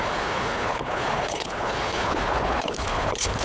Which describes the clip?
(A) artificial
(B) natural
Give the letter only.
A